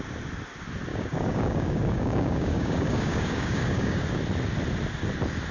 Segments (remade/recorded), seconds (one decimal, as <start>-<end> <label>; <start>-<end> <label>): 0.0-0.9 recorded; 0.9-4.2 remade; 4.2-5.5 recorded